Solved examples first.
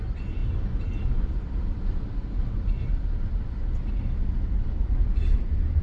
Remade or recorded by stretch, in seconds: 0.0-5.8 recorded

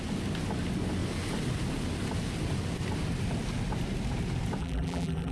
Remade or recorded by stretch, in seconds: 0.0-4.6 recorded; 4.6-5.3 remade

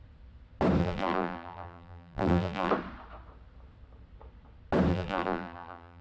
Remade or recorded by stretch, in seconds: 0.0-0.8 recorded; 0.8-2.7 remade; 2.7-4.9 recorded; 4.9-6.0 remade

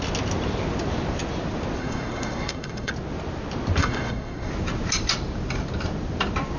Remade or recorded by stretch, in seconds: 0.0-1.8 recorded; 1.8-2.9 remade; 2.9-3.8 recorded; 3.8-4.5 remade; 4.5-6.6 recorded

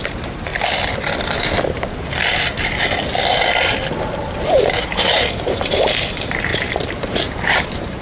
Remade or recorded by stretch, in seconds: 0.0-0.5 remade; 0.5-4.6 recorded; 4.6-8.0 remade